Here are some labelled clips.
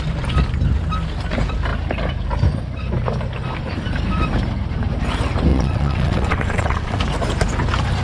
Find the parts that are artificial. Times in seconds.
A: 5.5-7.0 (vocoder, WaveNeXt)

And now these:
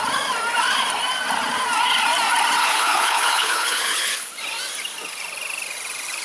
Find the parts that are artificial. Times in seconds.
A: 2.6-4.3 (codec, HILCodec)

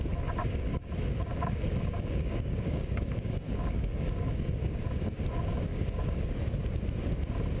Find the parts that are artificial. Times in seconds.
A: 0.4-0.9 (codec, DAC); 1.3-5.2; 5.7-6.3